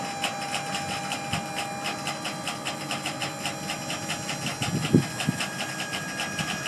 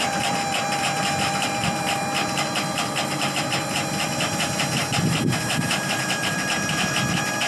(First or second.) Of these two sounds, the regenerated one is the second